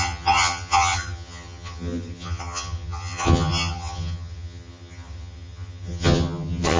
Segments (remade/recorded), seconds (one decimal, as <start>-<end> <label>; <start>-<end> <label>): 0.0-6.8 remade